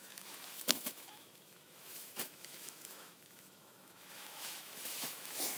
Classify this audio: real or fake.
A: fake